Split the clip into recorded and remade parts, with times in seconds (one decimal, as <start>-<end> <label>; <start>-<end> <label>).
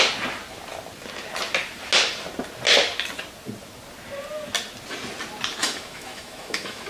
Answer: 0.0-5.6 recorded; 5.6-6.9 remade